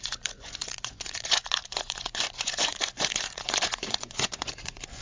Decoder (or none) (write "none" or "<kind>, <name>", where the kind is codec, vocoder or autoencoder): vocoder, Vocos